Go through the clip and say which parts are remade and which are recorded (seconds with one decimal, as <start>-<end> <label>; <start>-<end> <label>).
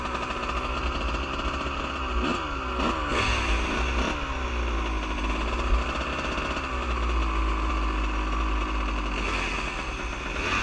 0.0-10.6 recorded